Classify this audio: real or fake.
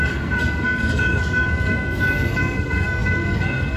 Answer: fake